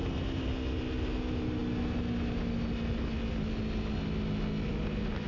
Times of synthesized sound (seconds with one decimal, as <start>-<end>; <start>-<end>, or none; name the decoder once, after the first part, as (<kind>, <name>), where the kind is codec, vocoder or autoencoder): none